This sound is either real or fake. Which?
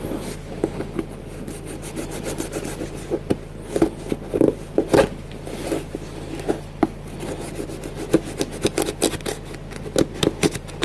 real